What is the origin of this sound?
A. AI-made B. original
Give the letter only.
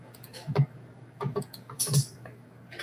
A